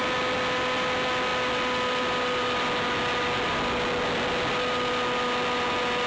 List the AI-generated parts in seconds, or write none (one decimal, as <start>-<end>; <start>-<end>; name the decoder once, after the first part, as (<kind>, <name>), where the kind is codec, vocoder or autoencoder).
none